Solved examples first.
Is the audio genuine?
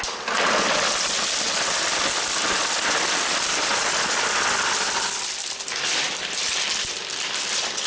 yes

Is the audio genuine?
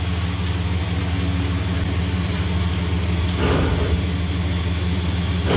yes